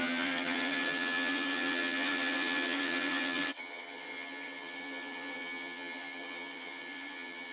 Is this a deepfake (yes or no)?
yes